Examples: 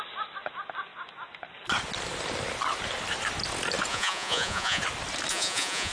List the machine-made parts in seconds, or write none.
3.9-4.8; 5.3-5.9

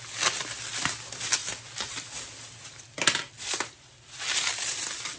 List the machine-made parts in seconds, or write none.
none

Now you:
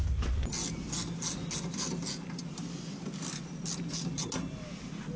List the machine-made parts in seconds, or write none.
none